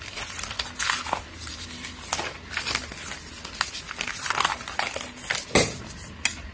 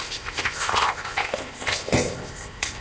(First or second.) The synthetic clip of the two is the second